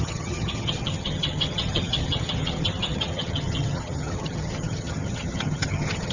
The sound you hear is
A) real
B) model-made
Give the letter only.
B